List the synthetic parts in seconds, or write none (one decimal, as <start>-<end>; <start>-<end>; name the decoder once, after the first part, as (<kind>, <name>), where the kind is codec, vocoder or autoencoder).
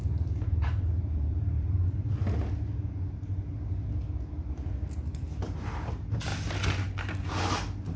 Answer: 0.0-2.1 (vocoder, BigVGAN v2)